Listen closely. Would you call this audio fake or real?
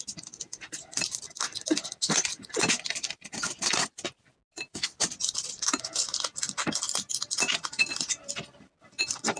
real